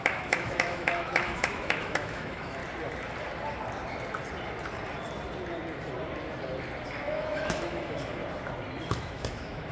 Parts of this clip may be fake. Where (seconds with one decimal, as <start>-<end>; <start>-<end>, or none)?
0.0-2.6; 7.0-8.2; 8.9-9.7

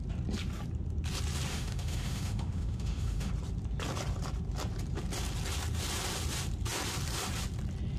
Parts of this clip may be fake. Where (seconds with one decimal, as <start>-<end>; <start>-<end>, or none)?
1.5-3.3

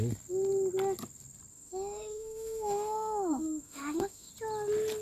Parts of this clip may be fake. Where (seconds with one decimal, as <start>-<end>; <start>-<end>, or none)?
1.5-4.3

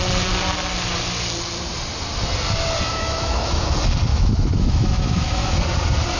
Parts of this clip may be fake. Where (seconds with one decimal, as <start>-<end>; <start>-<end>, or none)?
2.9-3.6; 4.1-5.6

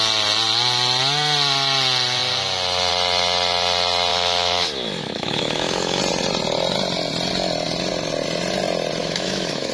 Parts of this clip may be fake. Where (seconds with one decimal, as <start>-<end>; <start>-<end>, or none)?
4.1-6.0; 9.0-9.7

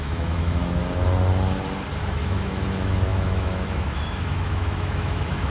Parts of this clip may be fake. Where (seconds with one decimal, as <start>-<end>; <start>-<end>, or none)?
0.0-0.8; 2.0-5.5

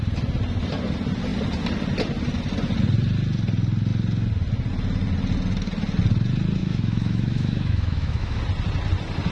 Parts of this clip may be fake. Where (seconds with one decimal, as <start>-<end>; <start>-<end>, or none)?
6.6-8.4

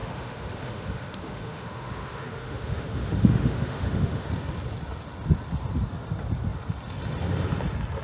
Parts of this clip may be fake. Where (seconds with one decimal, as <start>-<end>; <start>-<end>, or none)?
0.0-4.3